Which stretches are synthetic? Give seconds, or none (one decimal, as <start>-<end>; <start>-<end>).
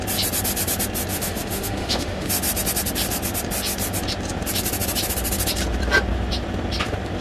1.1-2.3